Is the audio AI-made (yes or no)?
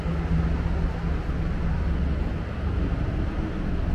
no